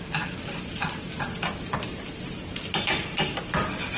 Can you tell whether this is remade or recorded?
recorded